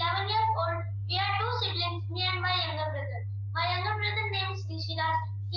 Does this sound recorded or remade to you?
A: recorded